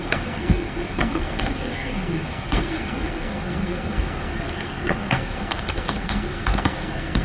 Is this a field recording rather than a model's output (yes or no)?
no